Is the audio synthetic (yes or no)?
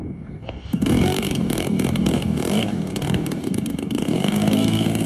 yes